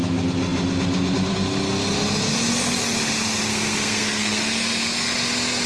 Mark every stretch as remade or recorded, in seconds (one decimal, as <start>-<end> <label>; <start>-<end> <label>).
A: 0.0-3.5 recorded; 3.5-5.1 remade; 5.1-5.7 recorded